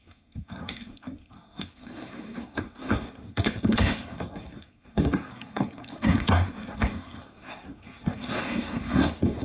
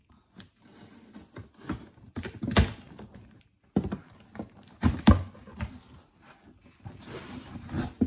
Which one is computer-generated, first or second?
first